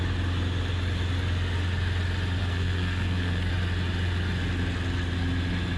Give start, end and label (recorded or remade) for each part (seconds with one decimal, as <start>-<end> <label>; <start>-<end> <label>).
0.0-2.4 recorded; 2.4-3.5 remade; 3.5-5.8 recorded